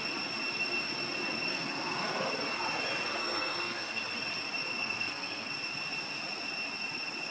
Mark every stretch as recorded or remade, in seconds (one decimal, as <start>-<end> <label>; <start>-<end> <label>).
0.0-1.5 recorded; 1.5-2.3 remade; 2.3-3.2 recorded; 3.2-4.0 remade; 4.0-4.8 recorded; 4.8-5.5 remade; 5.5-7.3 recorded